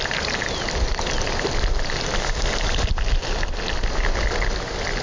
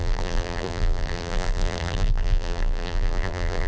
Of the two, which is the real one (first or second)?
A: first